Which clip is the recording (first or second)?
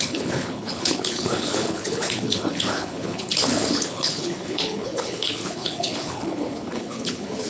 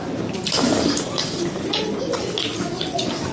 second